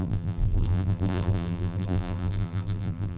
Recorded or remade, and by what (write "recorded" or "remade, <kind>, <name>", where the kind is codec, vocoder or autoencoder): remade, vocoder, BigVGAN v2